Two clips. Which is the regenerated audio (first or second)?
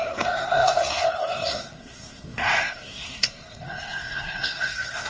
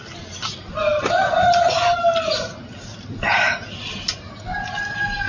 first